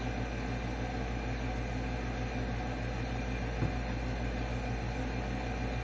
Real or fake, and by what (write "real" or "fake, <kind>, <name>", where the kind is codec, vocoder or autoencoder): real